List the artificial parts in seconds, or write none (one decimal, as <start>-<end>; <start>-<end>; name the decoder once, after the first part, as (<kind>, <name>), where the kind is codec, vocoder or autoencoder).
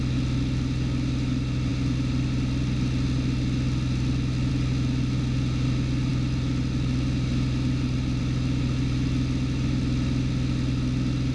none